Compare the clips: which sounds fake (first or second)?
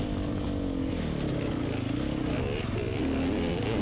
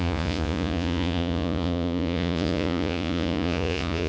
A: second